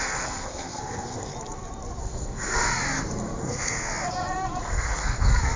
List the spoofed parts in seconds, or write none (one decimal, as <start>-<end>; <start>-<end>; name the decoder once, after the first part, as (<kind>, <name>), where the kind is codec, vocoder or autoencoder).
0.0-1.3 (codec, SNAC); 2.0-2.7; 3.4-3.9; 4.6-5.6